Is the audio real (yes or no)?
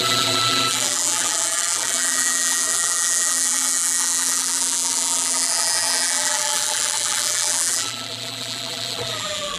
no